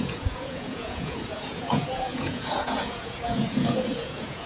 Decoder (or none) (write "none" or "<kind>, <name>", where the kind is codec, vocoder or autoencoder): vocoder, Vocos